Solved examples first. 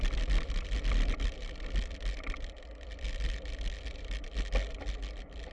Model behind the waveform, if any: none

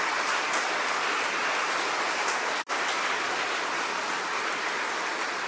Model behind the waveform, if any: none